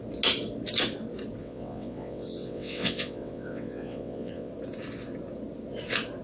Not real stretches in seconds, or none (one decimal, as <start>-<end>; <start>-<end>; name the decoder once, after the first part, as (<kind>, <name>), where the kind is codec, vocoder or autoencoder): 1.4-4.5 (vocoder, WaveNeXt)